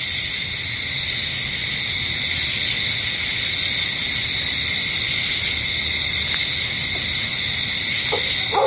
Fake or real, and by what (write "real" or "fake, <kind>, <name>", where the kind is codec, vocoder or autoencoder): real